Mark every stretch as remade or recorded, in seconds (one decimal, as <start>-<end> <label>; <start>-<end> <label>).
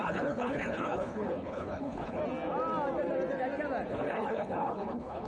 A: 0.0-2.2 remade; 2.2-3.9 recorded; 3.9-5.3 remade